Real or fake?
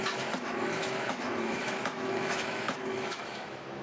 fake